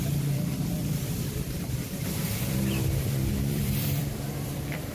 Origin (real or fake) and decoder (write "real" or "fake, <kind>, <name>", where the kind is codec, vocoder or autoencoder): fake, vocoder, BigVGAN v2